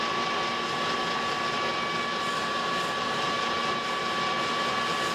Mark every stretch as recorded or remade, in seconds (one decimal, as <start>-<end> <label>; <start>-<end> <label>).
0.0-2.4 recorded; 2.4-3.3 remade; 3.3-5.1 recorded